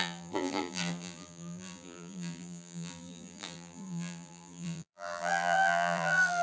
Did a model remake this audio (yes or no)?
yes